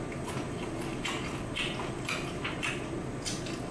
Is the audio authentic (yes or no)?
yes